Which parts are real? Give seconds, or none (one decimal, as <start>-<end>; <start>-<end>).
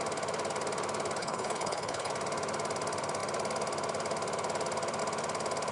0.0-1.2; 2.1-5.7